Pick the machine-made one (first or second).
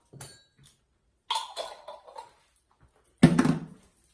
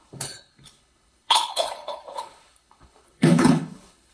second